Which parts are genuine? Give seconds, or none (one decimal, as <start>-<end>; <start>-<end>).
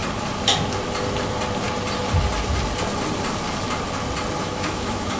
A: 0.0-4.4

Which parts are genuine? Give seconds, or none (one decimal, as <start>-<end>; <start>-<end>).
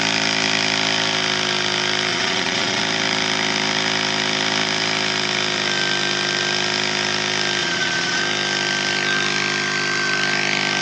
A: 0.0-2.1; 2.8-7.6; 8.2-10.8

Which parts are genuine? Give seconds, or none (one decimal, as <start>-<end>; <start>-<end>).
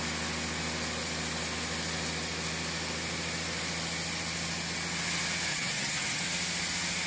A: 0.0-5.5; 6.2-7.1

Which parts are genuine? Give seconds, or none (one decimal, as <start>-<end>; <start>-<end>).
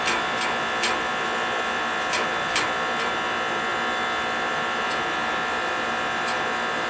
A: 0.0-6.9